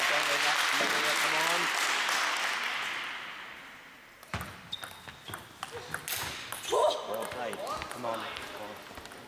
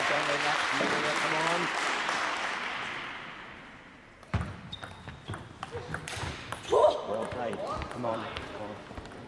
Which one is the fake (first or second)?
second